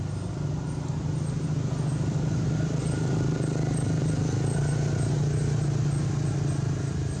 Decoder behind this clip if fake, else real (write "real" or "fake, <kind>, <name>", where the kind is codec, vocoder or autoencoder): real